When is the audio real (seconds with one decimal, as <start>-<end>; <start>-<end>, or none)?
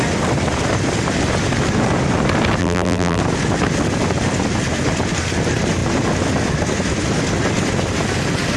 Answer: 0.0-2.6; 3.2-8.6